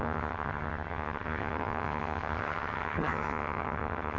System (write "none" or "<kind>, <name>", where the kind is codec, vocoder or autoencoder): vocoder, HiFi-GAN